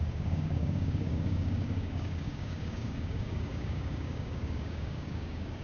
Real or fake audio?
fake